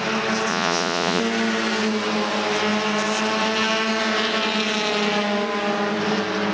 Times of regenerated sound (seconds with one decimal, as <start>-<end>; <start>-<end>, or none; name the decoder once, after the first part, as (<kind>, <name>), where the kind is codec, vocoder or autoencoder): 0.5-1.2 (vocoder, Vocos)